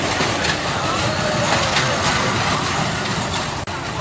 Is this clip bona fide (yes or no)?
yes